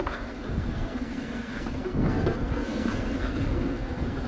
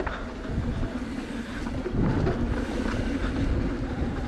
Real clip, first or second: second